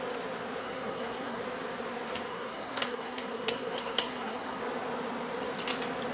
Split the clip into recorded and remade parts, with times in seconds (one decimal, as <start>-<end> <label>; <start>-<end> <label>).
0.0-0.6 recorded; 0.6-1.4 remade; 1.4-2.3 recorded; 2.3-4.6 remade; 4.6-6.1 recorded